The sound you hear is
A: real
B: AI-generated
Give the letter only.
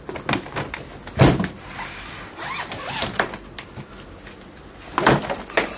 A